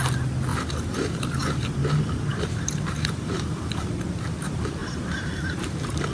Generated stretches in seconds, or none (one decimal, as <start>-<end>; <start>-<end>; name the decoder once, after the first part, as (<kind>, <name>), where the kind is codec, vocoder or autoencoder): 0.5-1.7 (vocoder, BigVGAN v2); 2.3-3.7; 4.8-6.1